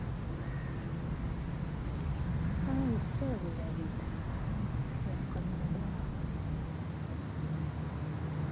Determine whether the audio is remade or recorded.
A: recorded